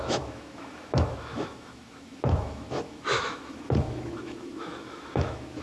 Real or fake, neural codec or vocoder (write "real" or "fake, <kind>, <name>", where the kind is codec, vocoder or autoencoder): fake, autoencoder, DAC-VAE